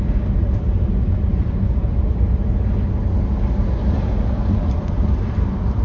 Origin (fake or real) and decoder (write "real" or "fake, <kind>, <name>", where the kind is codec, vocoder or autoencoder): real